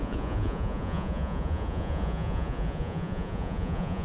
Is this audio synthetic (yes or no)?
yes